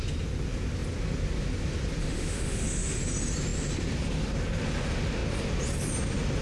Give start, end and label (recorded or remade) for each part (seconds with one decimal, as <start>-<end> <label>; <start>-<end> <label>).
0.0-2.0 recorded; 2.0-3.0 remade; 3.0-6.4 recorded